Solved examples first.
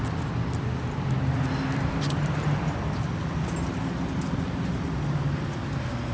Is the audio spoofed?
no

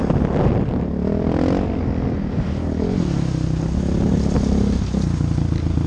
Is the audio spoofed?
no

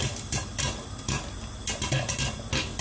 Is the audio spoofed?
no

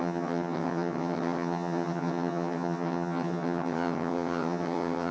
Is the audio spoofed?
yes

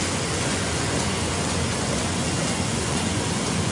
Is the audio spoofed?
yes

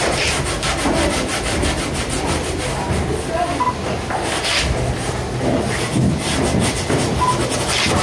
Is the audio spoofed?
no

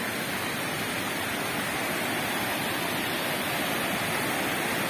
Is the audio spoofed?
no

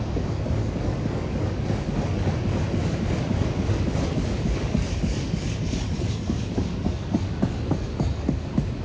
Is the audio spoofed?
yes